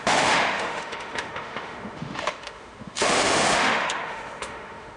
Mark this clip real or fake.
fake